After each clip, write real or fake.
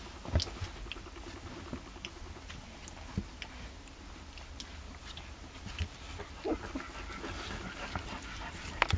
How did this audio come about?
real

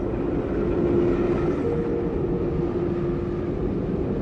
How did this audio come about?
real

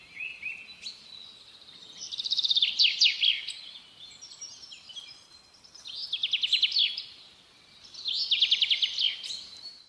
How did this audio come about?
real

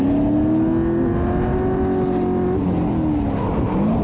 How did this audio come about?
real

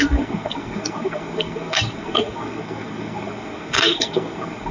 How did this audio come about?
fake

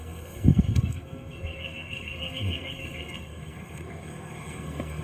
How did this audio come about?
fake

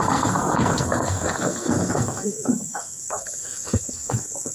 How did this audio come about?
fake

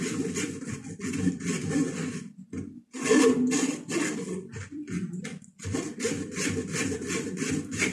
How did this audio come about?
fake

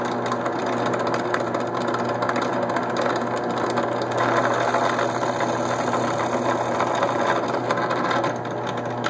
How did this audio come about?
real